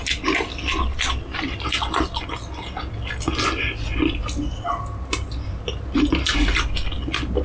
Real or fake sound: real